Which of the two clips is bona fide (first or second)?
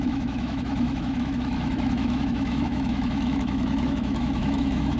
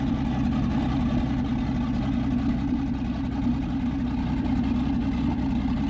second